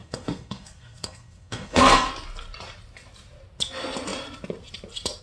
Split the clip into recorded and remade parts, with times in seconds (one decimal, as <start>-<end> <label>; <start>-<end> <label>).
0.0-2.1 remade; 2.1-5.2 recorded